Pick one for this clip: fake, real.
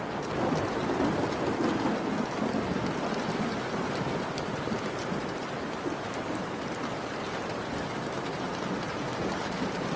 real